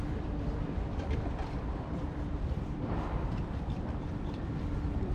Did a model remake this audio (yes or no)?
yes